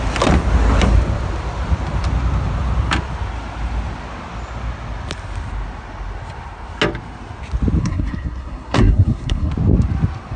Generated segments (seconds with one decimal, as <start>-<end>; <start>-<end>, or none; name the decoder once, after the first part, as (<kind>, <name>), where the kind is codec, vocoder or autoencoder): 7.8-9.5 (codec, SNAC)